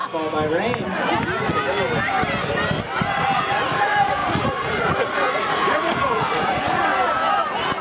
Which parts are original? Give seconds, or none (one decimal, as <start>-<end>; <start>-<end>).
0.0-3.2; 6.9-7.8